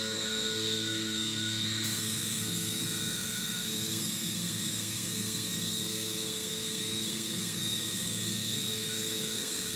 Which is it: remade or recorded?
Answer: remade